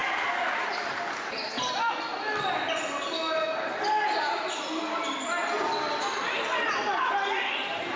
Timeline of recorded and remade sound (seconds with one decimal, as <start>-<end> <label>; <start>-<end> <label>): 0.0-8.0 recorded